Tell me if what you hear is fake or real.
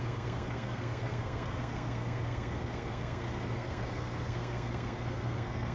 fake